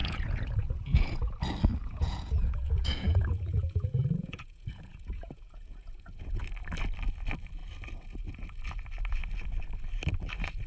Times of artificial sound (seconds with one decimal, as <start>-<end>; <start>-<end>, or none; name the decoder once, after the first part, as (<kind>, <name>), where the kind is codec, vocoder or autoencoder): 0.0-1.3 (vocoder, Vocos); 1.8-6.4